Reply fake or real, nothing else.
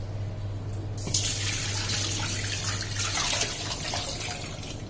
real